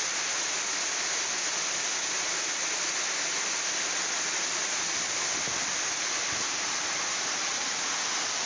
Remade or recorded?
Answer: recorded